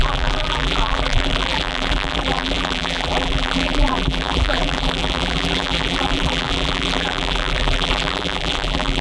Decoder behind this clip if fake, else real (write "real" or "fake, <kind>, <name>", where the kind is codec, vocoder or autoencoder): fake, vocoder, BigVGAN v2